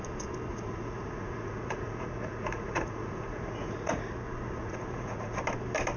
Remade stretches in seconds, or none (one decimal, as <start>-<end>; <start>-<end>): 0.5-4.1; 4.6-5.4